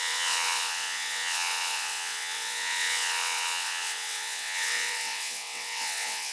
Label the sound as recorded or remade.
remade